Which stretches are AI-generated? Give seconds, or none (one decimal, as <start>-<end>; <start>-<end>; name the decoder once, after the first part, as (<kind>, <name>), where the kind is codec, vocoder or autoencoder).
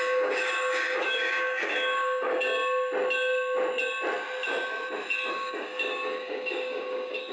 0.0-2.5 (codec, DAC); 5.3-7.3